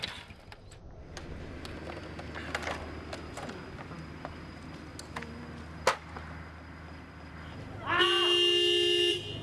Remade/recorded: recorded